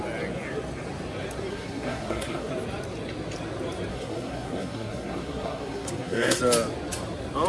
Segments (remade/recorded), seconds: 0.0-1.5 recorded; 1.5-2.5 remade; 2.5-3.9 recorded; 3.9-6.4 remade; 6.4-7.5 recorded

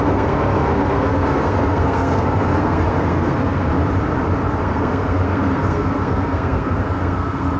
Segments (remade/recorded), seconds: 0.0-3.7 remade; 3.7-4.6 recorded; 4.6-7.6 remade

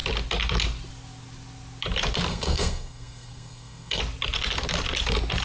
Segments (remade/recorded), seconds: 0.0-2.3 recorded; 2.3-4.0 remade; 4.0-5.4 recorded

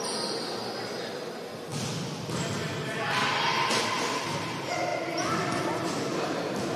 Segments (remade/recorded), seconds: 0.0-6.8 recorded

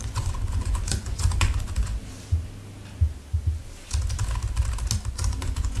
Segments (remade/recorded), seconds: 0.0-1.9 remade; 1.9-5.1 recorded; 5.1-5.8 remade